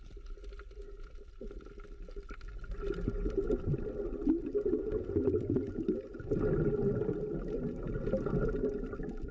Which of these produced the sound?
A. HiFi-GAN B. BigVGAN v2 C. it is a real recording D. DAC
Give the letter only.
C